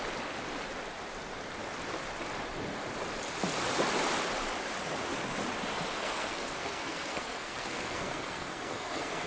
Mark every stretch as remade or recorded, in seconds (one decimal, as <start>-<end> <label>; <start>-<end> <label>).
0.0-5.9 recorded; 5.9-9.3 remade